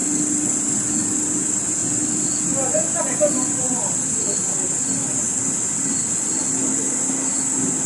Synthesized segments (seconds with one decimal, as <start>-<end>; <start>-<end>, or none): 1.8-3.0